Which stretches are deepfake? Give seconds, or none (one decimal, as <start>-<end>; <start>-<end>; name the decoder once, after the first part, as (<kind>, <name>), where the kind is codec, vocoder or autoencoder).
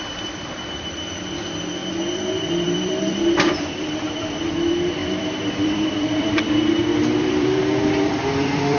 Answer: 0.0-8.8 (vocoder, BigVGAN v2)